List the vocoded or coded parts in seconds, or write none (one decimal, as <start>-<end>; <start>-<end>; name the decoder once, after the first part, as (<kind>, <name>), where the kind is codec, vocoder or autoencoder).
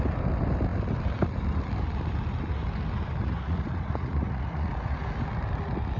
3.2-4.7 (vocoder, Vocos)